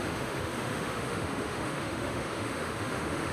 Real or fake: fake